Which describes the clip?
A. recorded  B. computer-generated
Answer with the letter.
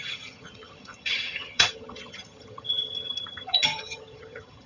B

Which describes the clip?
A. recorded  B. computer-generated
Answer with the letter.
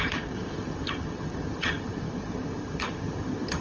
B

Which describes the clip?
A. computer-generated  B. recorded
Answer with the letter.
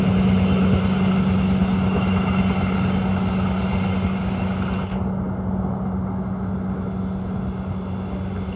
B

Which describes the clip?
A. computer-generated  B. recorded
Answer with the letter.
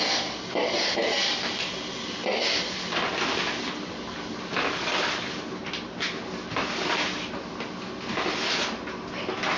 B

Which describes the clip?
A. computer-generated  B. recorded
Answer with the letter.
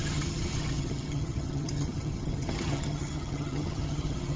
A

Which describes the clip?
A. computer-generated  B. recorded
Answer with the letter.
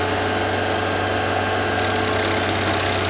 B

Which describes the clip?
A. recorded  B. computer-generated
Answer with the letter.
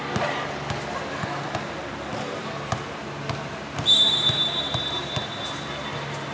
A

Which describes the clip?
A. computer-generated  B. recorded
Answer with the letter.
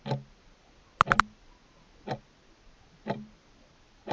B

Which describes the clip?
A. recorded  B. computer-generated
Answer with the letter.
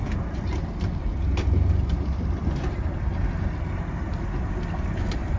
A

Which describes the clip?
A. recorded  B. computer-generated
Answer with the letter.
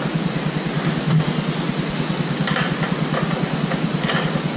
A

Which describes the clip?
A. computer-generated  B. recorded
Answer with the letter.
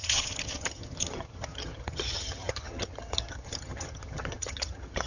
A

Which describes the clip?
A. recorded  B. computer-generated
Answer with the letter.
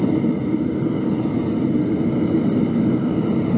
A